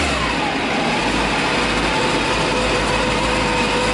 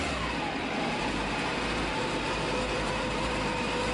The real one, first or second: first